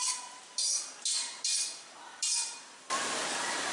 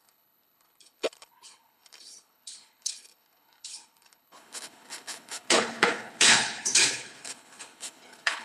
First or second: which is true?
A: first